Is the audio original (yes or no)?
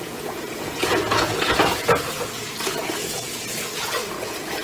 no